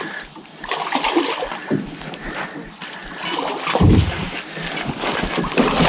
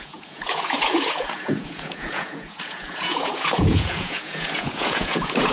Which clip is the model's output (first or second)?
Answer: second